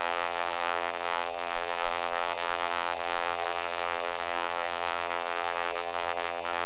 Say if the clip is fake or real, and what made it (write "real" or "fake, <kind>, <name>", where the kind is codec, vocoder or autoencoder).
fake, vocoder, BigVGAN v2